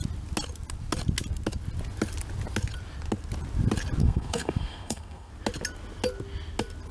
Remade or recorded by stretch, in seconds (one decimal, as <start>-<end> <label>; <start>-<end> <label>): 0.0-4.0 recorded; 4.0-5.3 remade; 5.3-6.9 recorded